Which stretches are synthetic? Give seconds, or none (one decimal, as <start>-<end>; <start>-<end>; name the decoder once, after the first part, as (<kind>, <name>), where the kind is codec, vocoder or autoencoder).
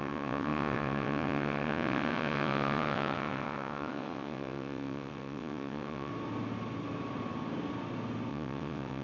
0.0-6.1 (vocoder, WaveNeXt); 8.3-9.0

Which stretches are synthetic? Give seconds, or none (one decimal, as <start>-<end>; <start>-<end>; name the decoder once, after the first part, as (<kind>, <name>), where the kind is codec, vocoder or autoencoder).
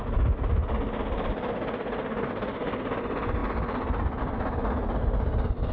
none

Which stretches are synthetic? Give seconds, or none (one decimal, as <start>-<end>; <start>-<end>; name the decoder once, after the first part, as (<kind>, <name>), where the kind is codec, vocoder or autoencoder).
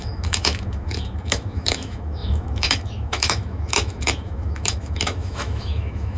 0.0-6.2 (autoencoder, DAC-VAE)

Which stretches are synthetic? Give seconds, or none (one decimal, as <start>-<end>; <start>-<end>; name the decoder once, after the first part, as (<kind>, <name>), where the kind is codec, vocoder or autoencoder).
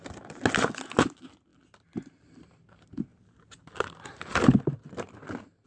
1.5-2.7 (vocoder, BigVGAN v2); 3.1-4.3